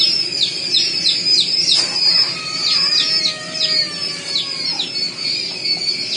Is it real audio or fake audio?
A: real